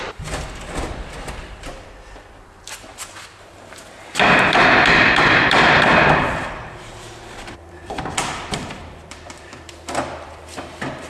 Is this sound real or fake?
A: fake